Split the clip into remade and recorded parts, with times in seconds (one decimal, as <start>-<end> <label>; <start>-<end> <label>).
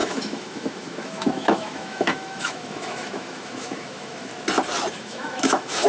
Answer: 0.0-4.3 remade; 4.3-4.9 recorded; 4.9-5.9 remade